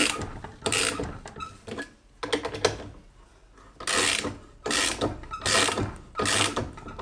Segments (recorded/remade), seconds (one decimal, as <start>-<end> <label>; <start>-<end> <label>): 0.0-2.1 remade; 2.1-7.0 recorded